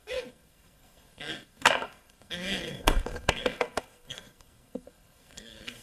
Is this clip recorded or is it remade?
remade